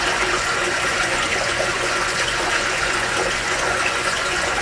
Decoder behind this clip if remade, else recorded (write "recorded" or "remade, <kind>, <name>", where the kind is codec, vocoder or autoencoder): remade, vocoder, Vocos